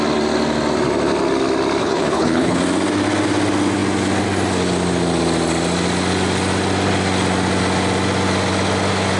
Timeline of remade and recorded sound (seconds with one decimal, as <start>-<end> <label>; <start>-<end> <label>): 0.0-1.8 recorded; 1.8-2.6 remade; 2.6-9.2 recorded